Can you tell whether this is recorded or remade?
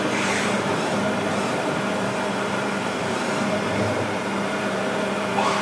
remade